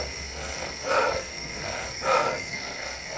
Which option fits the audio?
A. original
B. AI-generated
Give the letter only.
B